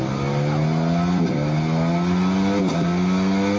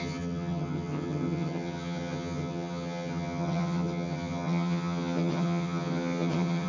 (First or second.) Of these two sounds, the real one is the first